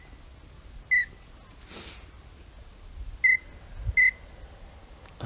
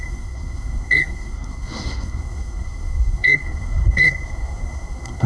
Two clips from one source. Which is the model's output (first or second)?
second